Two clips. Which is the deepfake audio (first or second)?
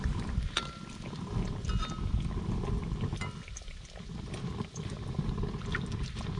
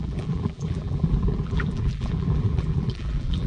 second